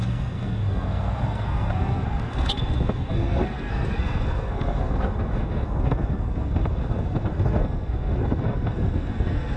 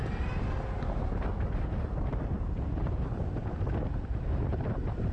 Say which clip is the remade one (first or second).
first